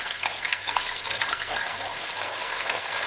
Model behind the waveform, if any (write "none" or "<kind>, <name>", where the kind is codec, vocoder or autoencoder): codec, SNAC